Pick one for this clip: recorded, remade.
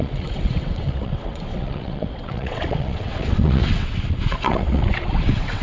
remade